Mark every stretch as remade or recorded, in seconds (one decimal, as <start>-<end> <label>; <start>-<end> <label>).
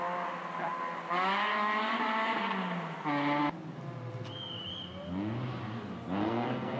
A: 0.0-6.2 recorded; 6.2-6.8 remade